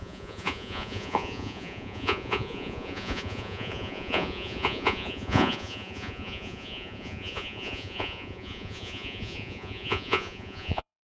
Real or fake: fake